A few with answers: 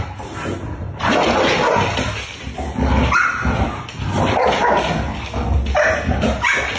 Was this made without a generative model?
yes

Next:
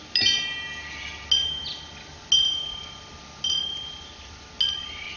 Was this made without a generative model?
yes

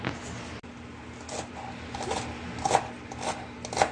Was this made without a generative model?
yes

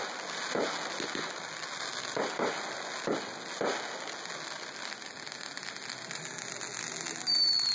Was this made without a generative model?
yes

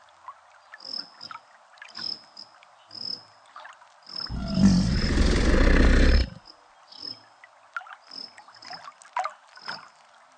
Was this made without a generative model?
yes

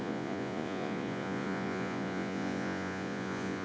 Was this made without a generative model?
no